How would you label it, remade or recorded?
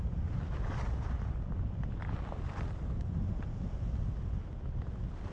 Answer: recorded